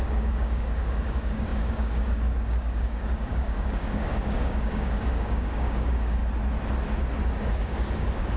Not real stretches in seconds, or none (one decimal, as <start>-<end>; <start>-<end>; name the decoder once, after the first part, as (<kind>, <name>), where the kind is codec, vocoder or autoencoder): 0.0-6.2 (codec, DAC); 7.2-8.4